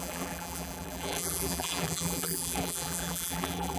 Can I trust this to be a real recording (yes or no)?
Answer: no